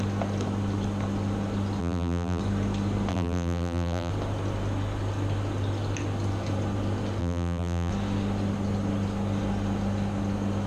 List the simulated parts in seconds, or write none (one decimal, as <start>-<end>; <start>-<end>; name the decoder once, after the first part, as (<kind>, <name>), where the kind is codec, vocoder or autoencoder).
1.8-2.4 (vocoder, BigVGAN v2); 3.1-4.1; 7.2-7.9